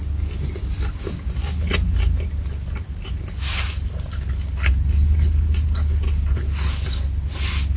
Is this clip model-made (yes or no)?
no